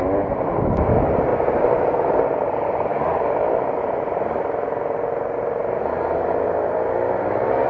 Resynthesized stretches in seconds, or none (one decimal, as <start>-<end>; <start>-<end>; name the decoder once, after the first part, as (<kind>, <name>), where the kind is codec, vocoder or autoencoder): 0.0-7.7 (vocoder, BigVGAN v2)